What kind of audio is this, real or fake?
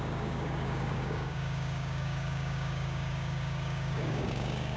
fake